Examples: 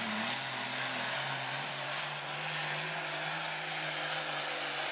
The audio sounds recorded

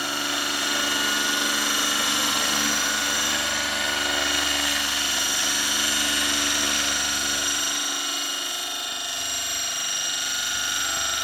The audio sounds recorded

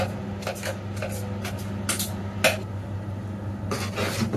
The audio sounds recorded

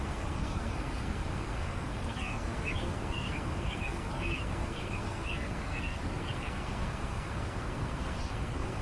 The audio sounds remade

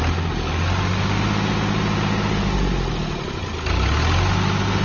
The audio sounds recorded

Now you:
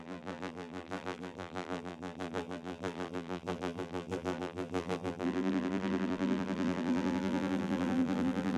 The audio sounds remade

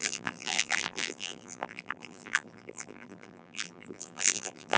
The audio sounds remade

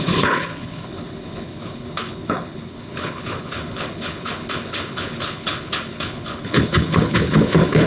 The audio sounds remade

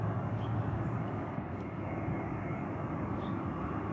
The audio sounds remade